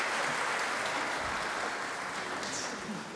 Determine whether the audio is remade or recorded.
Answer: recorded